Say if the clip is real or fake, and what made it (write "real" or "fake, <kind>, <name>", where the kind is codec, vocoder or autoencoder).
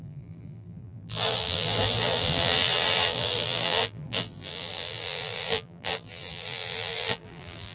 fake, vocoder, BigVGAN v2